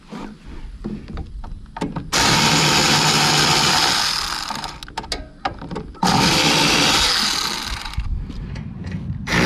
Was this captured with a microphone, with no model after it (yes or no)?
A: yes